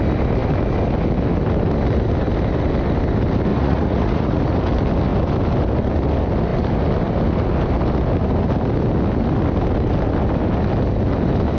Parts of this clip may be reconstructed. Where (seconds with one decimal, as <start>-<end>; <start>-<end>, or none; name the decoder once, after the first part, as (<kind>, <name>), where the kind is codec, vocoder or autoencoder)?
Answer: 3.5-4.4 (vocoder, Vocos)